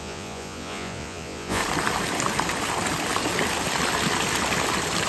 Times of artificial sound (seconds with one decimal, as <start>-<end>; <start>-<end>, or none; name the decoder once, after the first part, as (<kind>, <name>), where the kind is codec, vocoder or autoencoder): 0.0-1.6 (vocoder, Vocos)